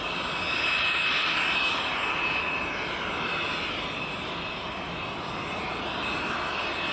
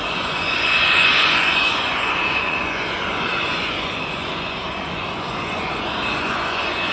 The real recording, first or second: first